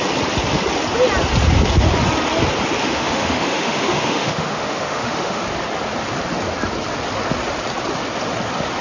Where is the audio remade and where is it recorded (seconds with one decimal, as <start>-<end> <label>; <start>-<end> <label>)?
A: 0.0-2.8 recorded; 2.8-5.4 remade; 5.4-8.8 recorded